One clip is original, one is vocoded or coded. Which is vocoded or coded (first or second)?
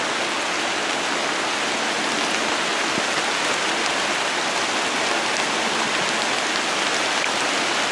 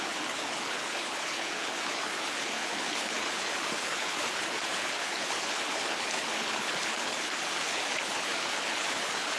second